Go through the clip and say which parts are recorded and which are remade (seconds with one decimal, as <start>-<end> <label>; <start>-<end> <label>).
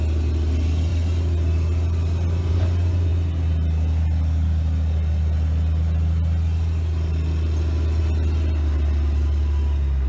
0.0-10.1 recorded